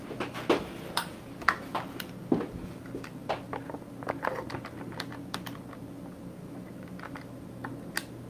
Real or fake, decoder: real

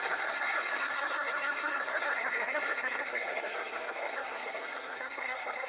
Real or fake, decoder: fake, codec, SNAC